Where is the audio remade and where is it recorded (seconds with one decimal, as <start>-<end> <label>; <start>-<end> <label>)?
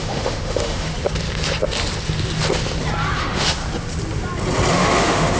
0.0-0.9 remade; 0.9-3.2 recorded; 3.2-3.6 remade; 3.6-4.7 recorded; 4.7-5.4 remade